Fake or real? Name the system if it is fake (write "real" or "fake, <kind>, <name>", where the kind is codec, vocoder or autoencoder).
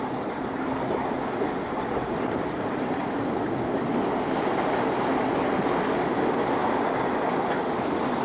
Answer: real